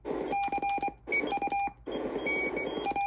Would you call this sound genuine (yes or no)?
yes